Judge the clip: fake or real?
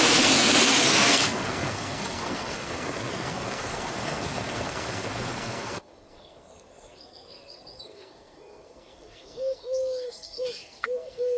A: fake